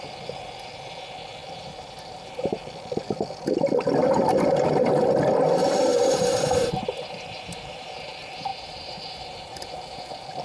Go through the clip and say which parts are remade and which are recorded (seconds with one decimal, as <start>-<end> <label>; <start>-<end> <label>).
0.0-1.4 recorded; 1.4-2.6 remade; 2.6-4.0 recorded; 4.0-5.1 remade; 5.1-5.6 recorded; 5.6-7.9 remade; 7.9-8.5 recorded; 8.5-9.6 remade; 9.6-10.4 recorded